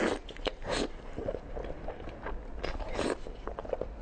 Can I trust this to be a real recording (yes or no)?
yes